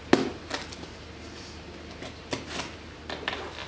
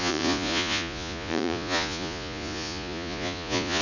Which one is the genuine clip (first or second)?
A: first